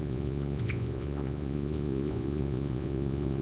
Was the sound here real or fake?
fake